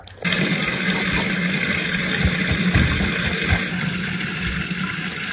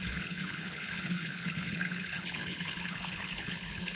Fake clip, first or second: second